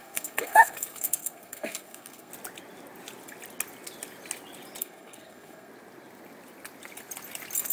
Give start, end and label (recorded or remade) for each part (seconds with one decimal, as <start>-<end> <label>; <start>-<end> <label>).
0.0-2.3 remade; 2.3-4.8 recorded; 4.8-5.7 remade; 5.7-7.7 recorded